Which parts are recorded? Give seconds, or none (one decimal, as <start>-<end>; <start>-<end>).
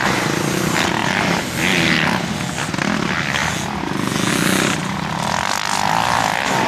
0.0-6.7